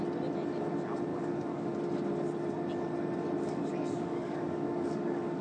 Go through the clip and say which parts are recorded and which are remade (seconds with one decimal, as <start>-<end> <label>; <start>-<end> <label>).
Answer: 0.0-1.1 recorded; 1.1-1.7 remade; 1.7-3.7 recorded; 3.7-5.4 remade